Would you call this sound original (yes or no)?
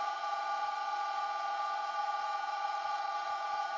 no